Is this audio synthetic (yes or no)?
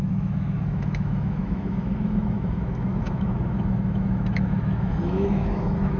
yes